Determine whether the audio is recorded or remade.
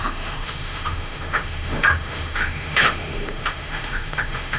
remade